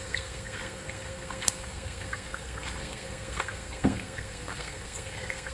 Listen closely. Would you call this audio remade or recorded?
remade